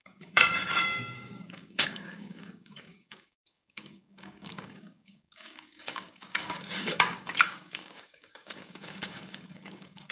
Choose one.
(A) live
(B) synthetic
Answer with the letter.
B